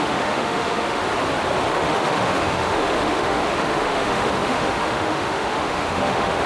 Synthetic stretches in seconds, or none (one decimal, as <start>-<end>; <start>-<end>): 0.0-1.0; 1.7-6.5